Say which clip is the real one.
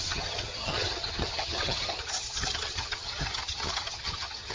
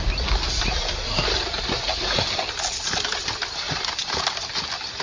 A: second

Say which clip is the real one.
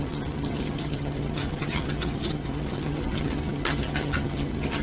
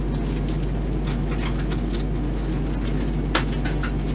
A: second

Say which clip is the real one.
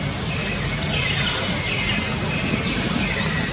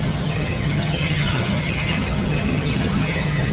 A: first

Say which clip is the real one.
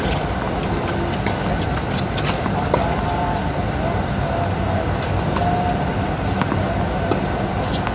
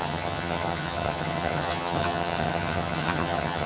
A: first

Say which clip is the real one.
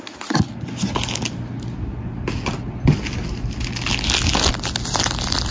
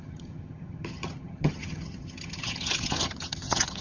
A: first